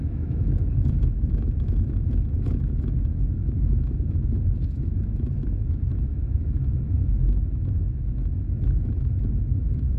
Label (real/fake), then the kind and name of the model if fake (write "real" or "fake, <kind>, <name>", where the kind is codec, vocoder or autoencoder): fake, autoencoder, DAC-VAE